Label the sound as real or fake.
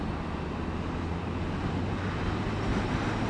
real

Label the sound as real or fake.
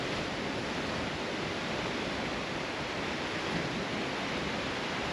fake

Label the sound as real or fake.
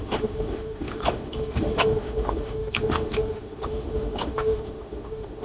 fake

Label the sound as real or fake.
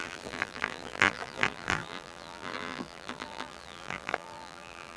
fake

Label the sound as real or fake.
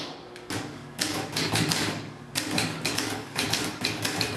fake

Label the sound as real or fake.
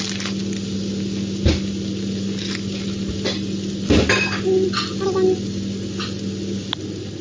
fake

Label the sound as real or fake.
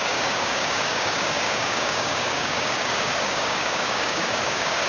fake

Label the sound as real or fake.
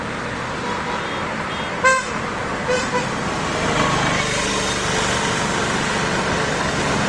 real